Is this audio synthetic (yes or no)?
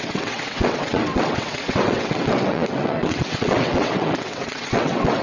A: yes